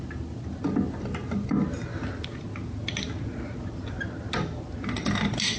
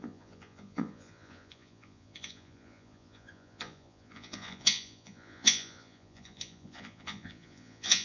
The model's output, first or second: second